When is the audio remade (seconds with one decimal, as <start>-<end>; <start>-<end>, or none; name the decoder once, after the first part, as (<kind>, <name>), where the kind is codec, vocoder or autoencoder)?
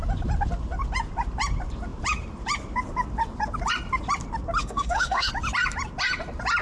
4.6-5.3 (autoencoder, DAC-VAE)